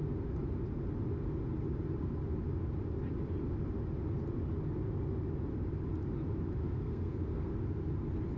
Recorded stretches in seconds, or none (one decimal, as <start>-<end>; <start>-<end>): 0.0-6.6; 7.5-8.4